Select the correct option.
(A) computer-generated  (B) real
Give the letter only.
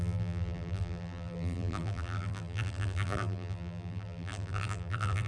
A